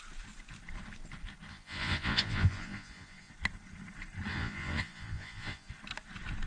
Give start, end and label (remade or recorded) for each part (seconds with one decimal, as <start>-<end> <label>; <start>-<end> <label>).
0.0-1.5 recorded; 1.5-3.3 remade; 3.3-4.3 recorded; 4.3-5.7 remade; 5.7-6.5 recorded